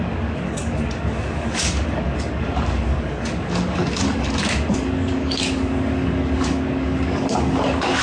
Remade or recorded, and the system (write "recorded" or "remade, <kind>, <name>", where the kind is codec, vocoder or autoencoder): remade, codec, DAC